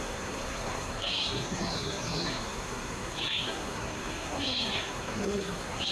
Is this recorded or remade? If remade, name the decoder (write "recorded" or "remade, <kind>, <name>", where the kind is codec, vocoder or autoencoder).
remade, codec, SNAC